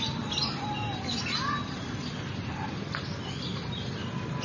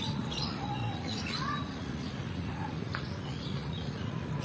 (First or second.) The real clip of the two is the first